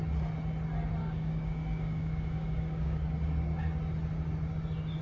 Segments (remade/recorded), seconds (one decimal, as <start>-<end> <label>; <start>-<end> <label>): 0.0-1.0 recorded; 1.0-3.0 remade; 3.0-5.0 recorded